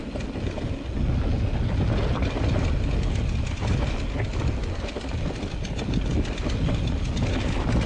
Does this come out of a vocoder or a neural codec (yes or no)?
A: no